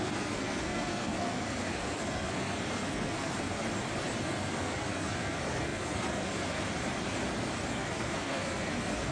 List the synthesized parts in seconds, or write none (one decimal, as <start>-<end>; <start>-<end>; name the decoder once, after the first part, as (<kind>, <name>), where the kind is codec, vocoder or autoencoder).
0.0-3.6 (codec, SNAC); 4.2-6.7; 7.7-9.1